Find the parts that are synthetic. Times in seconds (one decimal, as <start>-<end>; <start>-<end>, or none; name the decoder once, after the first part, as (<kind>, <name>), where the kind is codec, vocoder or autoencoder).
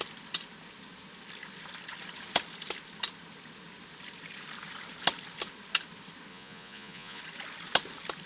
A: 6.3-7.2 (vocoder, Vocos)